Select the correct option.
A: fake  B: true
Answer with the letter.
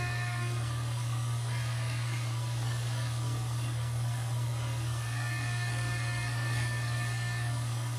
A